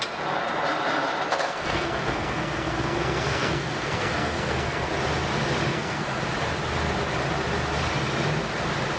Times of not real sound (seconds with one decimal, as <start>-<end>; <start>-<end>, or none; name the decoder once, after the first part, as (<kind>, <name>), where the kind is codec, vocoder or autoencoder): 1.3-4.9 (codec, SNAC); 5.7-6.2